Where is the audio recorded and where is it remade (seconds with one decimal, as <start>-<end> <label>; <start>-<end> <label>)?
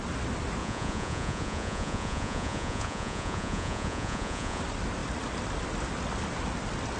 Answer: 0.0-0.6 recorded; 0.6-4.6 remade; 4.6-7.0 recorded